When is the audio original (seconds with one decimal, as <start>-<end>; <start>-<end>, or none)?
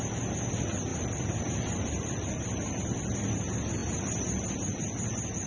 0.0-0.9; 3.4-5.5